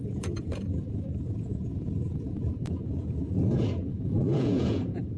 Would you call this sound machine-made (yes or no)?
yes